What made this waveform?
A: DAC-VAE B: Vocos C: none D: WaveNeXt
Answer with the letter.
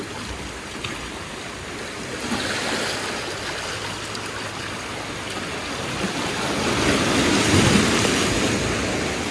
C